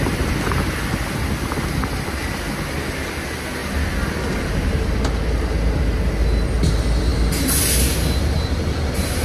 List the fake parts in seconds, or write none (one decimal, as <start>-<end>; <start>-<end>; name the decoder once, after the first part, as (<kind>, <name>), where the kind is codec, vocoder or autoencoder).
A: none